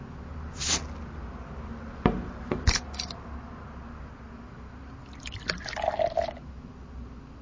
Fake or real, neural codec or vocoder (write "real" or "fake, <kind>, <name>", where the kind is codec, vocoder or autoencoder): real